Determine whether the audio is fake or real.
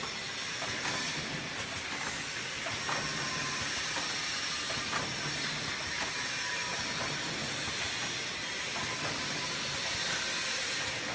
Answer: real